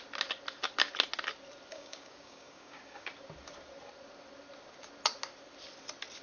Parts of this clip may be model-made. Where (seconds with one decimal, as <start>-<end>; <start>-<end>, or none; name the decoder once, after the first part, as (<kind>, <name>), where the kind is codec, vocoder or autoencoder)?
1.7-3.1 (codec, DAC)